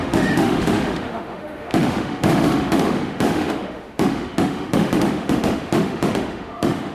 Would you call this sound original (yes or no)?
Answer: no